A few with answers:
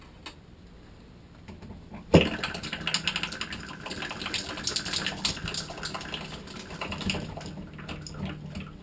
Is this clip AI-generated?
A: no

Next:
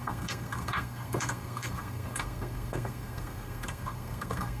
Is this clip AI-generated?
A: yes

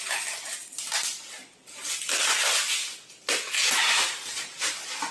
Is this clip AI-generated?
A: no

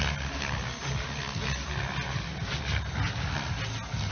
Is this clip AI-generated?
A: no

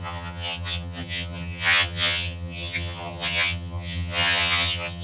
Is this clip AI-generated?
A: yes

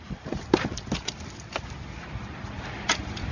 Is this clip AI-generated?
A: yes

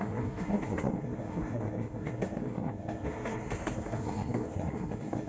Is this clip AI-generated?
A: yes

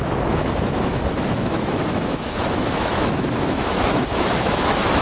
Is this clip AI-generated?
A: yes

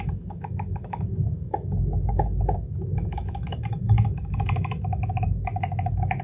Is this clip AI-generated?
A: yes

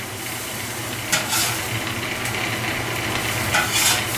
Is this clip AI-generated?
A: no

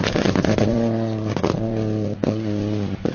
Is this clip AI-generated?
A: yes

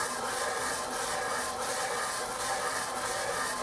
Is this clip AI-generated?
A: no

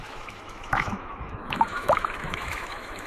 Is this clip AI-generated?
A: yes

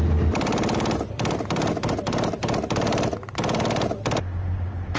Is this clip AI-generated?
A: no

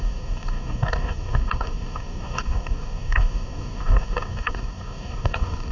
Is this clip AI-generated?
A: yes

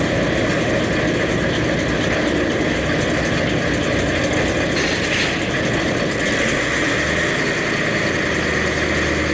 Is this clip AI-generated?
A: no